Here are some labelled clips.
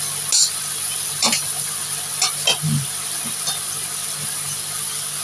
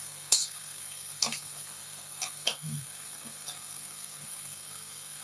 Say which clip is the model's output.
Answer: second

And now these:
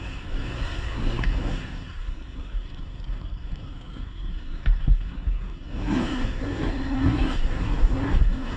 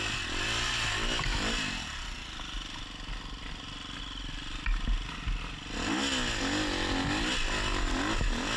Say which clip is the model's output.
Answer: first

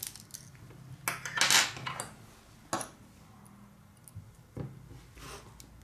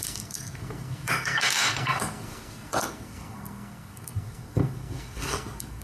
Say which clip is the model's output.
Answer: second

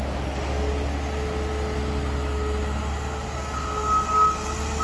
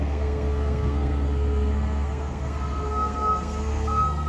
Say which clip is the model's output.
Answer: second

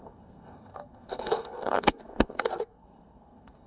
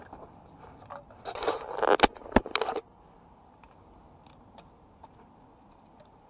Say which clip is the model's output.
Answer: first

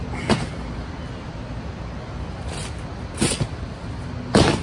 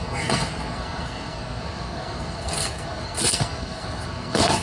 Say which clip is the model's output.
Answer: second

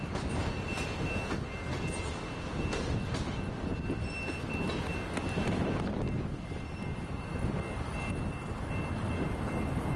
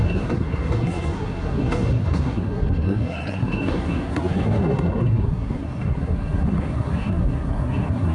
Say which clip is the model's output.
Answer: second